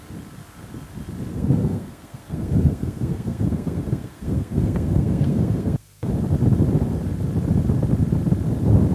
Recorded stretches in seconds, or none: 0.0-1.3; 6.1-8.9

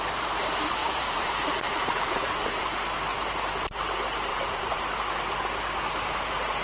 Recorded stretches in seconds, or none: 0.0-0.8; 2.6-4.3; 4.8-6.6

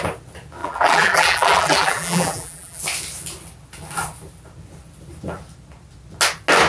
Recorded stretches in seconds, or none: 0.0-0.6; 2.8-6.7